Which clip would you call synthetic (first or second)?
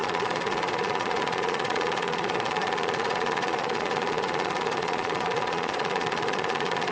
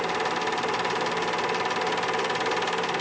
first